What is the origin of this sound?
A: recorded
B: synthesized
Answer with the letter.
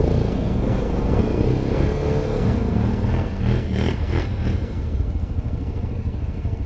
B